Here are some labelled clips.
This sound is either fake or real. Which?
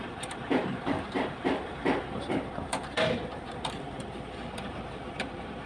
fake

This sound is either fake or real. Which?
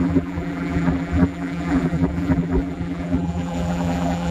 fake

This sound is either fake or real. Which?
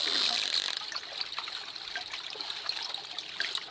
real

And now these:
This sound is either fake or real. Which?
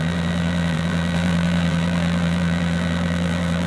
fake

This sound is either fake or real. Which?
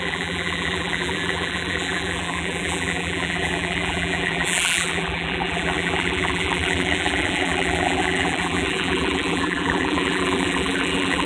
fake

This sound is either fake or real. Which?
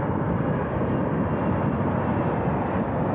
real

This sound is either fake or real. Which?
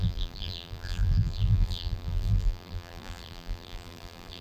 fake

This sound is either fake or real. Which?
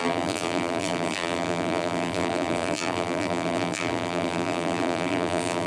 fake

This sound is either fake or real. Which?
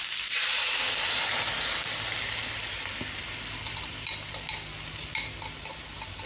real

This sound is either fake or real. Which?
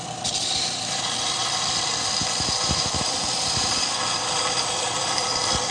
fake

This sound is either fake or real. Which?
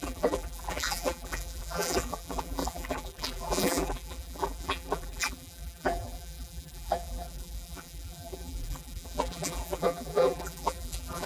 fake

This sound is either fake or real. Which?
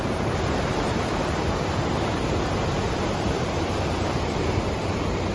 fake